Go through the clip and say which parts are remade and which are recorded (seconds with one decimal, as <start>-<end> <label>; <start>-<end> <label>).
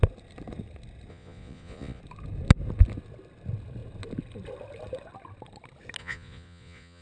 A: 0.0-1.1 recorded; 1.1-2.0 remade; 2.0-6.0 recorded; 6.0-7.0 remade